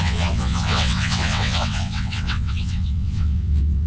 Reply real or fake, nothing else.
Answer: fake